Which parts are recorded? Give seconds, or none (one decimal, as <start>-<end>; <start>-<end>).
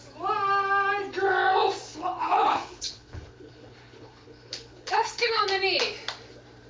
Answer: 0.0-1.9; 5.4-6.7